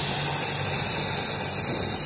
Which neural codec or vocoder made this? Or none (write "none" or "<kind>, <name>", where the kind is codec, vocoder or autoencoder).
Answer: none